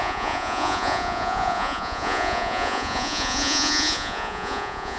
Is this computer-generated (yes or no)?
yes